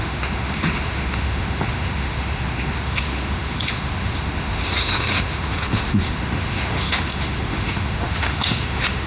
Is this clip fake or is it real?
fake